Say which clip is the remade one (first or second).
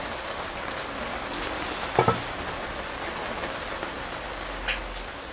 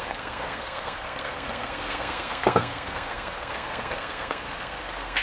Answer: second